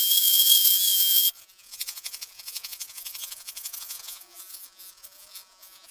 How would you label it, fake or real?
fake